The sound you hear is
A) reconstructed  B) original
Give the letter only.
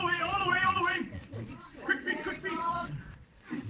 A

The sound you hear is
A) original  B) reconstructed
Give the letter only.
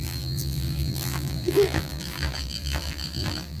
B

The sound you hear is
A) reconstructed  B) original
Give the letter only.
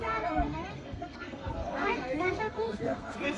A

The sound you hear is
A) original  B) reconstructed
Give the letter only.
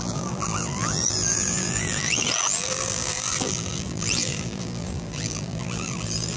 B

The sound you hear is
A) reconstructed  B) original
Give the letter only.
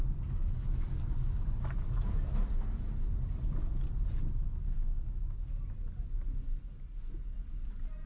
B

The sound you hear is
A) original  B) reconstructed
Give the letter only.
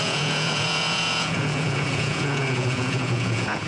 B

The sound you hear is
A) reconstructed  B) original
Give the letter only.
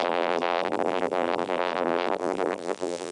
A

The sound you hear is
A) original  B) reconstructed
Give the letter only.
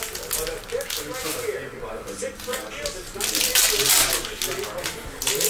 A